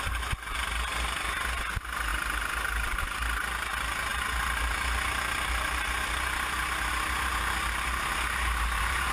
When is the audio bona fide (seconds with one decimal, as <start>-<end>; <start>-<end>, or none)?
0.0-9.1